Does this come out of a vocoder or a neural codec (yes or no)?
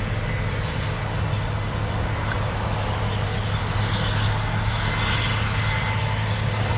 no